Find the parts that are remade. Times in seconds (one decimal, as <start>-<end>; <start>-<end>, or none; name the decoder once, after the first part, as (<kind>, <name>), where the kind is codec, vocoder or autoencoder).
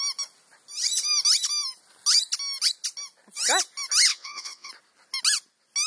4.1-4.7 (vocoder, WaveNeXt)